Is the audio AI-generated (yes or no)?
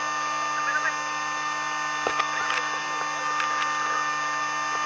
no